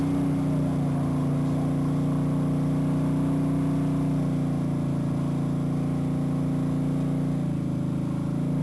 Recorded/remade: recorded